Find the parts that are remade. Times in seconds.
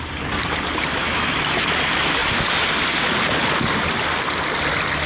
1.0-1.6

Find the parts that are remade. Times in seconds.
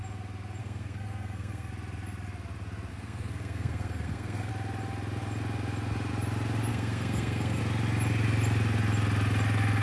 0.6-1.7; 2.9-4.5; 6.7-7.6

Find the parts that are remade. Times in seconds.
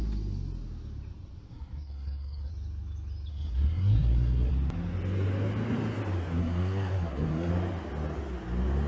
1.5-2.5; 3.3-4.5; 6.4-7.5